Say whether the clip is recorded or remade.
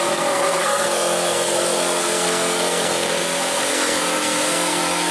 remade